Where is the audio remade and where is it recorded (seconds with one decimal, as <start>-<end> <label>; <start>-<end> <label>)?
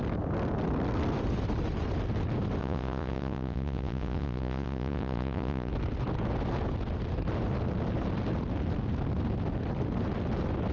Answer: 0.0-2.6 recorded; 2.6-5.7 remade; 5.7-10.7 recorded